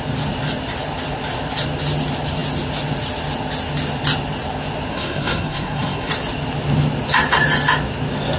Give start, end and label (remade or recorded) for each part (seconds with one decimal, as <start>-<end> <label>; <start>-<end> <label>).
0.0-4.9 recorded; 4.9-6.1 remade; 6.1-8.4 recorded